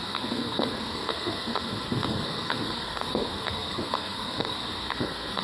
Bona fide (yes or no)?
no